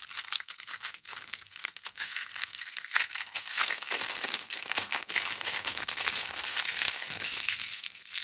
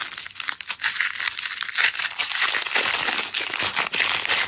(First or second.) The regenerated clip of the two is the first